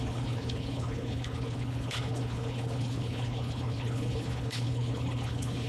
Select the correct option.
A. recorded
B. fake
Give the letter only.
B